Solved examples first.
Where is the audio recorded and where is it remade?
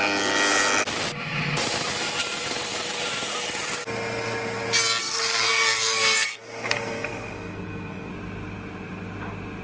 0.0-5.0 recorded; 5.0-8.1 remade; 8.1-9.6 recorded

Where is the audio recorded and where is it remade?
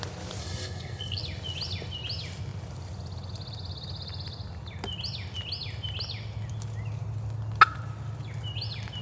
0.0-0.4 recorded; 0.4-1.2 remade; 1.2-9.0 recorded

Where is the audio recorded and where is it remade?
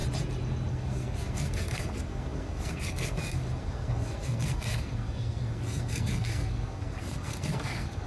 0.0-0.7 recorded; 0.7-8.1 remade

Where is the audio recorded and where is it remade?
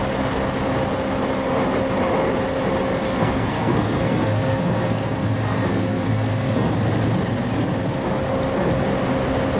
0.0-3.1 recorded; 3.1-6.7 remade; 6.7-9.6 recorded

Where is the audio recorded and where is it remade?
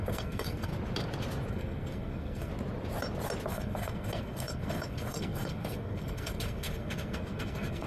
0.0-0.7 remade; 0.7-1.5 recorded; 1.5-2.5 remade; 2.5-3.5 recorded; 3.5-7.9 remade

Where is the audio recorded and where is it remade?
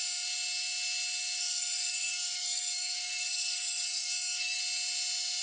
0.0-1.4 recorded; 1.4-4.6 remade; 4.6-5.4 recorded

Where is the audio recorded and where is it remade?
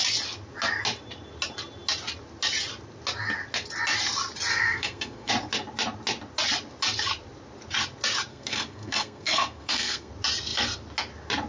0.0-4.5 recorded; 4.5-5.3 remade; 5.3-8.3 recorded; 8.3-10.1 remade; 10.1-11.5 recorded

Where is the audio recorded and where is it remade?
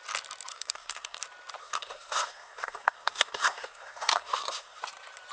0.0-0.5 recorded; 0.5-1.2 remade; 1.2-1.6 recorded; 1.6-4.8 remade; 4.8-5.3 recorded